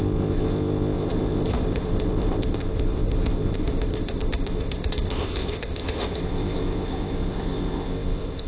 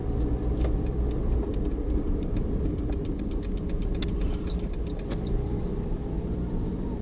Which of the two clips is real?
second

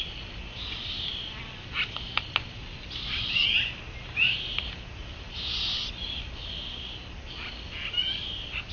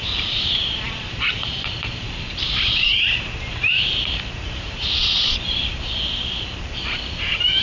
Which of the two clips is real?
first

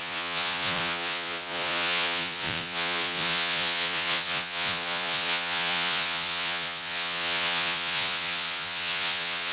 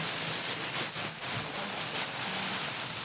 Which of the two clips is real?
second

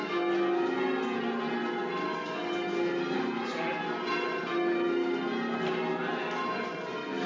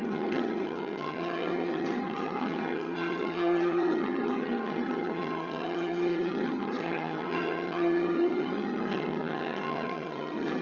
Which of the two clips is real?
first